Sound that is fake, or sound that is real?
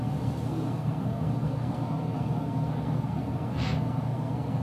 fake